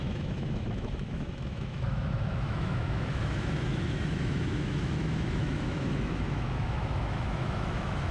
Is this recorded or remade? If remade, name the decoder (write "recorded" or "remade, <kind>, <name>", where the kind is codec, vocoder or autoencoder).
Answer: remade, autoencoder, DAC-VAE